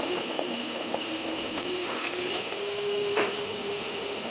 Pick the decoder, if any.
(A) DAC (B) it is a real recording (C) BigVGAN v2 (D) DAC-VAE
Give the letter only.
D